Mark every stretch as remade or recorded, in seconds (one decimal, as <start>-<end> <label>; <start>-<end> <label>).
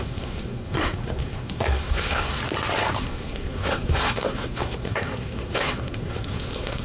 0.0-2.4 remade; 2.4-3.0 recorded; 3.0-6.8 remade